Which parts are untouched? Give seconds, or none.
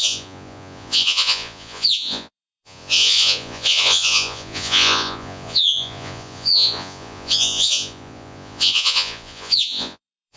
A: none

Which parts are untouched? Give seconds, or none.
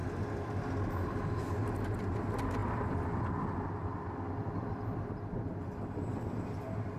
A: 1.5-7.0